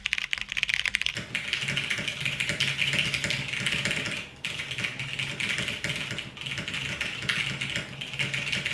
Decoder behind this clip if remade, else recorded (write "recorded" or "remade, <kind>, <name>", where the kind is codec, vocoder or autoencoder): recorded